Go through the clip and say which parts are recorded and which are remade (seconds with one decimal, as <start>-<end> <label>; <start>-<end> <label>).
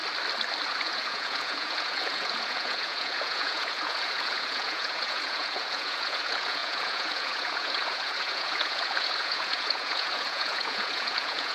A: 0.0-0.7 recorded; 0.7-11.5 remade